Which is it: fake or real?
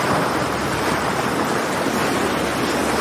real